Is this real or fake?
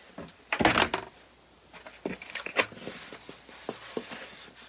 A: real